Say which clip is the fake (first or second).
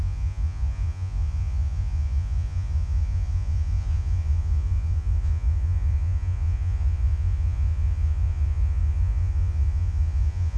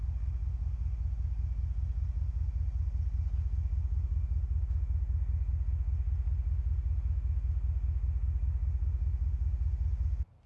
first